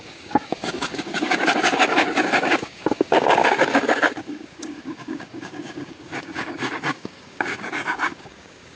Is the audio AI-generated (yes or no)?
yes